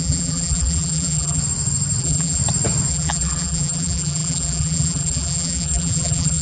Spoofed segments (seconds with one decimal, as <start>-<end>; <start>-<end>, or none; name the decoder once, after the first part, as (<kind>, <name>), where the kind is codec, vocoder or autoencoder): 0.0-1.4 (vocoder, BigVGAN v2); 2.0-2.4; 2.9-6.4

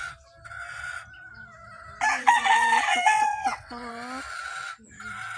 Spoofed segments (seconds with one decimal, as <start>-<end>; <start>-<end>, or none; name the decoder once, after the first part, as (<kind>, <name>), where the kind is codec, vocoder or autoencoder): 2.2-3.9 (vocoder, WaveNeXt)

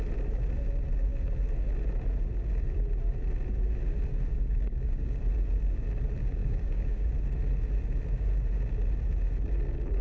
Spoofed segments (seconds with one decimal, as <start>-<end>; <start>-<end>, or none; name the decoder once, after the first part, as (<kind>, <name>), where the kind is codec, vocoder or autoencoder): 4.3-5.2 (codec, DAC); 6.4-7.1

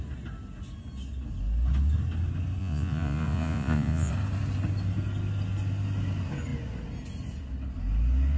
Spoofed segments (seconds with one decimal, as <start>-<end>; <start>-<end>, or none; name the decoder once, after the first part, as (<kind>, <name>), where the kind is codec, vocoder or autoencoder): 2.6-4.1 (vocoder, Vocos)

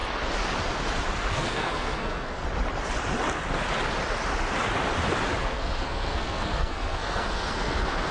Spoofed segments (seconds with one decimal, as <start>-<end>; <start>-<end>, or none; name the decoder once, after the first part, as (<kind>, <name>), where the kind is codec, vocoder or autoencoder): 1.3-2.4 (codec, SNAC); 5.4-8.1

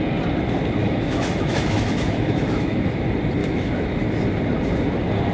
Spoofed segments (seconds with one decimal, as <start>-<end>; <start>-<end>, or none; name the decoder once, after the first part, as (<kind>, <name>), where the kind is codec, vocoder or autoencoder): 0.8-3.0 (autoencoder, DAC-VAE); 3.4-4.0

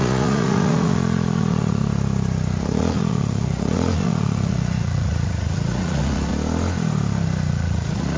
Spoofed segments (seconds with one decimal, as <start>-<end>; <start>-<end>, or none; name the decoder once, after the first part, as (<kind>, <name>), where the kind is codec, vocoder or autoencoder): 0.0-1.8 (vocoder, Vocos); 2.6-6.3; 7.5-8.2